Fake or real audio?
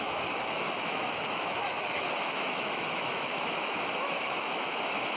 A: fake